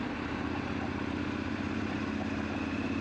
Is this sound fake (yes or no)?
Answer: no